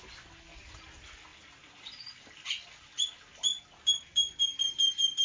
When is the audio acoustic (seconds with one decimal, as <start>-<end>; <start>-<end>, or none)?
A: 0.0-5.2